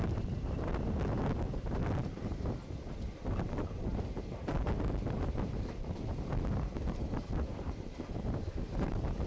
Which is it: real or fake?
fake